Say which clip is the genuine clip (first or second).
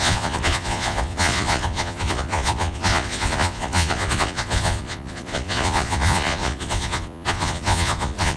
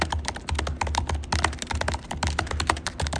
second